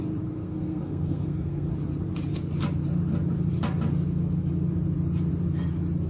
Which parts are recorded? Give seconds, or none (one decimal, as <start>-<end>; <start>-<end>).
0.0-0.4; 1.7-6.1